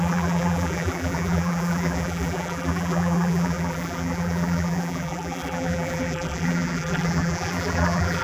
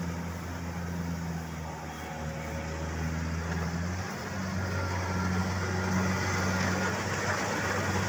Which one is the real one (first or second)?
second